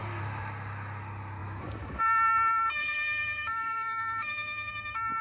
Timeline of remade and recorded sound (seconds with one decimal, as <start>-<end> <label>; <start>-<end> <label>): 0.0-2.8 recorded; 2.8-4.7 remade; 4.7-5.2 recorded